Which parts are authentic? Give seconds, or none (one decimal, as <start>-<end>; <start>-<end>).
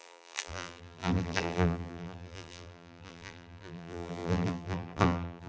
none